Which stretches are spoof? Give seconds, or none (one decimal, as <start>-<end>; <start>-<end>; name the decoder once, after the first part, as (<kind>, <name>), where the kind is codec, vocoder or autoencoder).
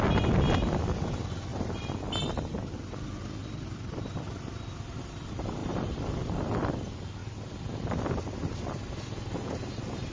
3.4-4.4 (vocoder, BigVGAN v2); 5.6-6.3